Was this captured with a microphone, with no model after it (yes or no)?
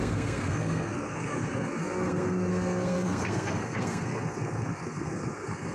no